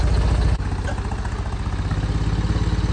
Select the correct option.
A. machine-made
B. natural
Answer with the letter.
B